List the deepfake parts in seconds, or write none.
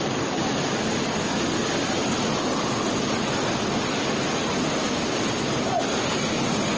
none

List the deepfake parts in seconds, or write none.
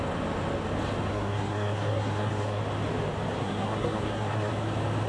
1.1-2.6; 3.4-4.5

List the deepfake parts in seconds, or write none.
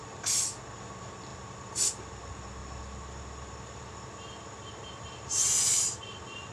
none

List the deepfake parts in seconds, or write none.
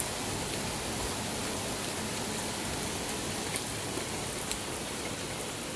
none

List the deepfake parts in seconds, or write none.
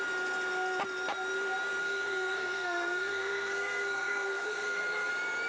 1.8-5.1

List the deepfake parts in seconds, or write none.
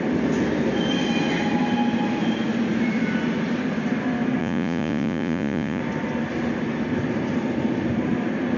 4.4-5.8